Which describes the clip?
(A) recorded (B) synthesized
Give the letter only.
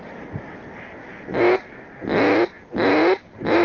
A